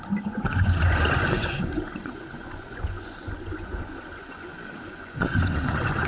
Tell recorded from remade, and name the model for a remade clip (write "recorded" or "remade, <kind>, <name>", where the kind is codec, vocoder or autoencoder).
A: remade, vocoder, Vocos